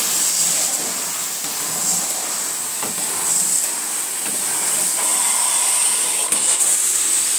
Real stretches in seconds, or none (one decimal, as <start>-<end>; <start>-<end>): 0.0-7.4